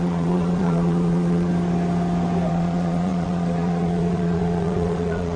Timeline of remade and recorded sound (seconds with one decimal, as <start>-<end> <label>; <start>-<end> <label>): 0.0-1.5 remade; 1.5-2.5 recorded; 2.5-5.4 remade